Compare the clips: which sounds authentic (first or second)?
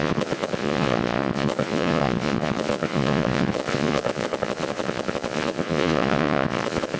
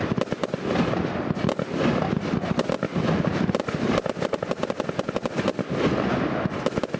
second